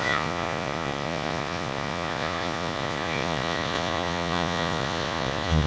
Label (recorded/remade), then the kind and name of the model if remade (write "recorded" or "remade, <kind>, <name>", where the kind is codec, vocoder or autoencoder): remade, vocoder, Vocos